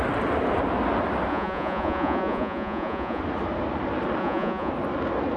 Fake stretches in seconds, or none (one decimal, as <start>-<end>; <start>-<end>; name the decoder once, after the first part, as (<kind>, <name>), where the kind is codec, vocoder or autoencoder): 1.3-3.2 (vocoder, Vocos); 4.2-4.7